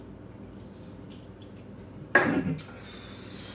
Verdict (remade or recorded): recorded